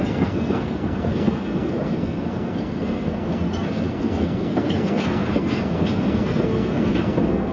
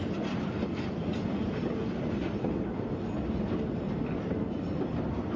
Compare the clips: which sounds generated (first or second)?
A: first